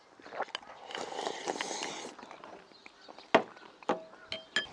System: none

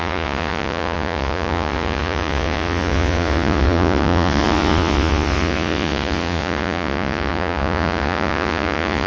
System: vocoder, Vocos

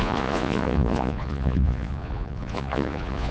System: vocoder, Vocos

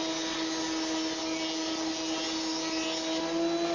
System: none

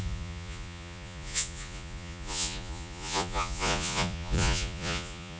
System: vocoder, Vocos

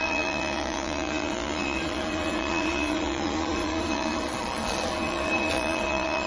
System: vocoder, Vocos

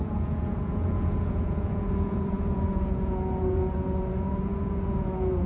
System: vocoder, Vocos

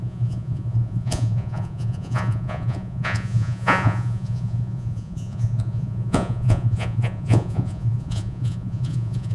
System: vocoder, Vocos